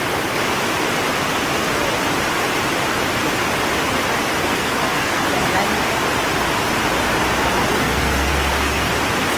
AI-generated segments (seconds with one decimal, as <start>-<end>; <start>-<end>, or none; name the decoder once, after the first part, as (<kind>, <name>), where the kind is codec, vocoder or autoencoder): 4.4-5.2 (codec, SNAC); 7.7-8.9

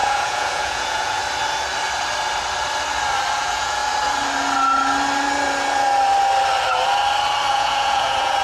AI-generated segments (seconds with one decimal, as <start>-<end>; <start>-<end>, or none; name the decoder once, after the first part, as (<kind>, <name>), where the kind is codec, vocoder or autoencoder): 0.0-1.2 (vocoder, Vocos); 3.3-3.8; 7.5-8.4

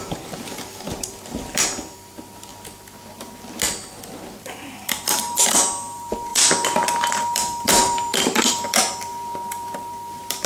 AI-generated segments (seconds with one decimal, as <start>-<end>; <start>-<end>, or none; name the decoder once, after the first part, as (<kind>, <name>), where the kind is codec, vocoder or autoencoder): 0.0-2.5 (vocoder, BigVGAN v2); 4.4-10.5

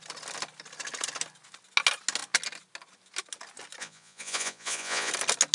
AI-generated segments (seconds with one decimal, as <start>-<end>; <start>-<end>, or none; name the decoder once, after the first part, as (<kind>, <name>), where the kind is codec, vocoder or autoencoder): 3.8-5.1 (vocoder, Vocos)

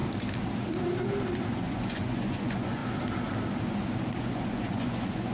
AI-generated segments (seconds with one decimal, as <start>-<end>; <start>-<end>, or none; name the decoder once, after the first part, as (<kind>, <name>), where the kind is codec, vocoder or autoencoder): 1.5-2.8 (vocoder, Vocos); 4.2-5.3